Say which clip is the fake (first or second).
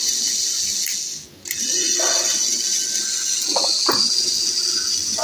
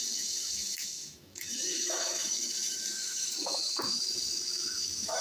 second